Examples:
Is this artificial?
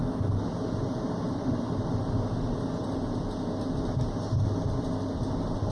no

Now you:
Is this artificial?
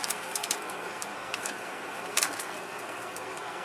yes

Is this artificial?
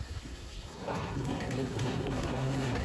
yes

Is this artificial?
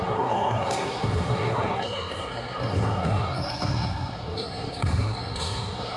yes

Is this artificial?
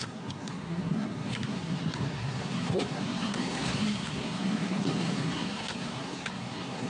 yes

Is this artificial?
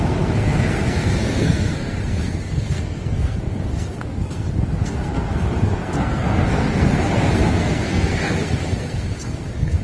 yes